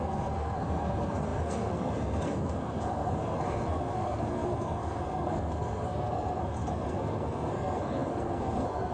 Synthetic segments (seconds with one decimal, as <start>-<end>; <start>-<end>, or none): 0.0-8.9